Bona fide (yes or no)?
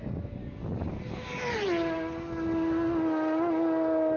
yes